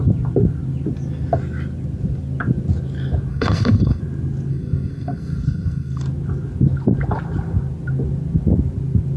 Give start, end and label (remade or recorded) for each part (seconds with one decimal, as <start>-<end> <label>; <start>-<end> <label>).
0.0-3.3 recorded; 3.3-4.0 remade; 4.0-4.5 recorded; 4.5-6.0 remade; 6.0-9.2 recorded